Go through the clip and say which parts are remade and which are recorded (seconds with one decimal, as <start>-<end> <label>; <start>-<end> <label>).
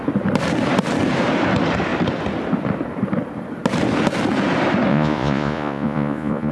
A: 0.0-4.9 recorded; 4.9-6.5 remade